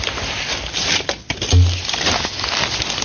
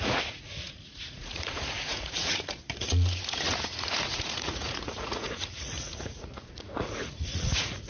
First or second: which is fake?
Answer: second